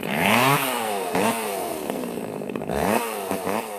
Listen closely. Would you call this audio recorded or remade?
remade